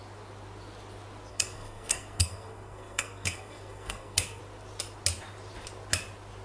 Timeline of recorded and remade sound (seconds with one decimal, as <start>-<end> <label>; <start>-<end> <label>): 0.0-1.3 recorded; 1.3-4.4 remade; 4.4-6.4 recorded